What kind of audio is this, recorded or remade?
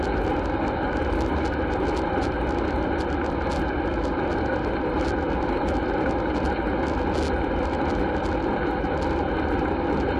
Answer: recorded